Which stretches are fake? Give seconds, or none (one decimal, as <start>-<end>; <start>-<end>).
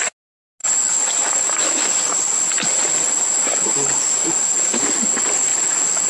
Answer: none